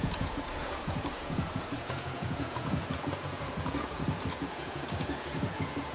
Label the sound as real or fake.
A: fake